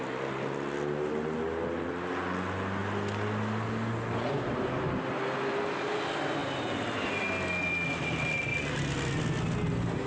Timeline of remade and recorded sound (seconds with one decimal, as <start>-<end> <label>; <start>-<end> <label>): 0.0-10.1 recorded